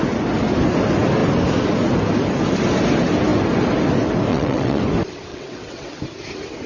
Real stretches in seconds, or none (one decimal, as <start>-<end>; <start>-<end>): 0.0-4.3; 4.8-5.3; 6.0-6.7